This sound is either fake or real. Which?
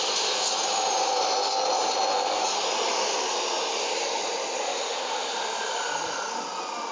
real